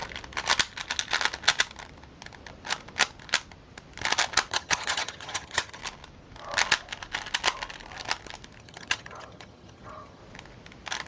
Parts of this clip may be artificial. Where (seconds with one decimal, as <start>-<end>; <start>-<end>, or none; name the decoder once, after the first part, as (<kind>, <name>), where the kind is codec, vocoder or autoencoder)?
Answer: 4.5-5.8 (vocoder, HiFi-GAN); 8.6-10.2

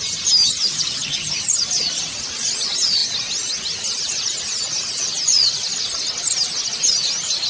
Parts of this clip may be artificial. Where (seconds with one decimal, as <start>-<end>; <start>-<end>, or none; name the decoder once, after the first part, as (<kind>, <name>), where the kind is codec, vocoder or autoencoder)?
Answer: 0.4-1.6 (vocoder, HiFi-GAN)

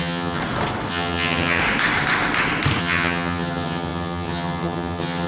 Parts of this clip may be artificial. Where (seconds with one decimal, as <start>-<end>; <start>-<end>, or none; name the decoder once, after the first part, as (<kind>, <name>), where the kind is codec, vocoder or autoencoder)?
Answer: 0.0-0.4 (vocoder, HiFi-GAN); 0.9-1.6; 2.8-5.3

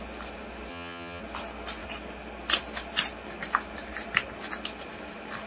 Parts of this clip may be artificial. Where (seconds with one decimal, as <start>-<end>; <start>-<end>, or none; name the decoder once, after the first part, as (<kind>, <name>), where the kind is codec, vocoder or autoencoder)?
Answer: 0.7-1.2 (vocoder, HiFi-GAN)

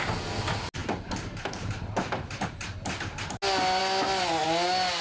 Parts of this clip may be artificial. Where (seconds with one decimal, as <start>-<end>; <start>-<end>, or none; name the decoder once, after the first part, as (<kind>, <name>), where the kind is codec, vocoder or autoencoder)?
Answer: none